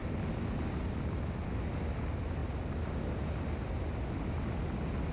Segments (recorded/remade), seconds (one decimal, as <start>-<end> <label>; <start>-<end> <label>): 0.0-5.1 recorded